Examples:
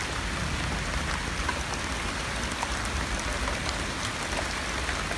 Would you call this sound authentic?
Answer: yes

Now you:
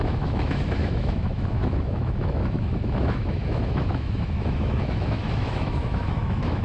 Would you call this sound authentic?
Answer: no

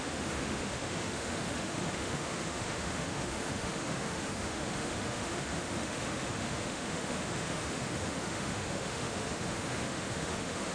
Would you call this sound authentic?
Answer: no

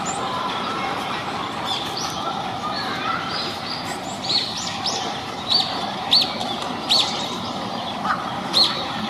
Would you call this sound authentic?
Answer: yes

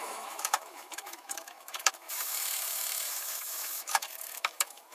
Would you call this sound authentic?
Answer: no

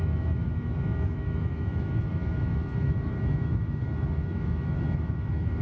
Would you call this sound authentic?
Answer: no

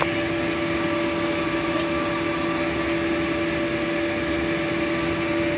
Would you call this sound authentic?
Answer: yes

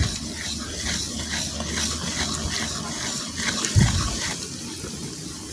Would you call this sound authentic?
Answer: yes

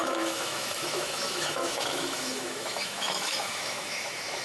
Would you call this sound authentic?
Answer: no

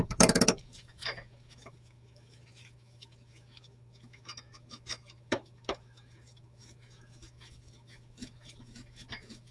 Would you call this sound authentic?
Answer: no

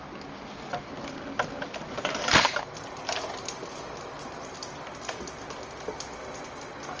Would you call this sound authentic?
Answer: yes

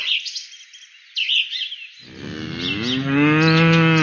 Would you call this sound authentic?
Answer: yes